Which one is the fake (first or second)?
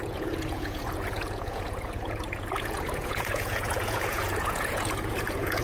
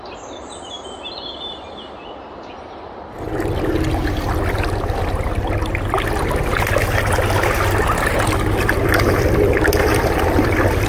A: first